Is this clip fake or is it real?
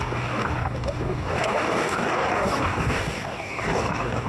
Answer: fake